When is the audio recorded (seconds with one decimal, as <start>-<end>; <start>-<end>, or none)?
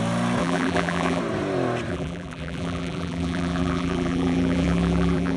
0.0-0.4; 1.2-1.9